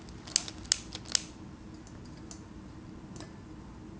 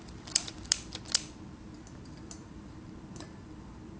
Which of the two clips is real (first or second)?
first